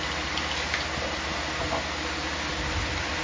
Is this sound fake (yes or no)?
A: no